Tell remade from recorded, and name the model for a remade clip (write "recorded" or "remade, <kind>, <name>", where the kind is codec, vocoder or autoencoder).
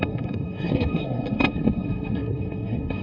remade, codec, SNAC